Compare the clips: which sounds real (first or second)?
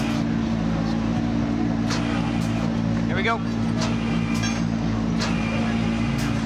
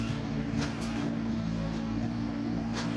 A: first